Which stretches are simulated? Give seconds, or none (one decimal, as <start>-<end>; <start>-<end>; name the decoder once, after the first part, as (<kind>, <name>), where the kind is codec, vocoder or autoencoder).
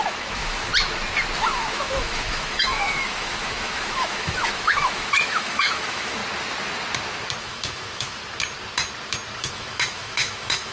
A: 0.0-0.7 (autoencoder, DAC-VAE); 1.4-6.2; 7.4-8.2; 9.4-10.7